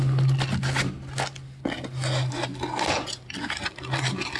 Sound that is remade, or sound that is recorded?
recorded